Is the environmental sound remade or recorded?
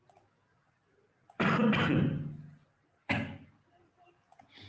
remade